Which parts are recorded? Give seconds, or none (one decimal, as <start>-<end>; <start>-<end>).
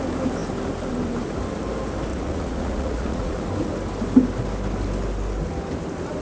0.0-2.1; 3.5-6.2